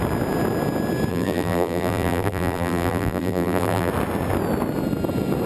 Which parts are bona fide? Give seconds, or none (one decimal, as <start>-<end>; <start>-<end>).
0.0-1.1; 3.9-5.5